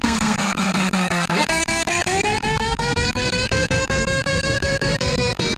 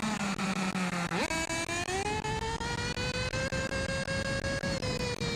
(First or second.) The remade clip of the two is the first